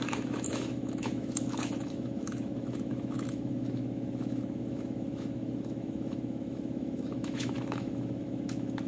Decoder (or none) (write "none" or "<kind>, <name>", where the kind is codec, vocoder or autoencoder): autoencoder, DAC-VAE